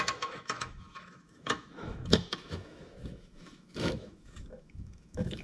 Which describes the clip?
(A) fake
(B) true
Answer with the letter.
A